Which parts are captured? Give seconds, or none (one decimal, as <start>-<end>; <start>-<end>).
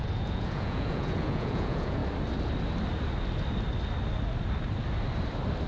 2.0-5.7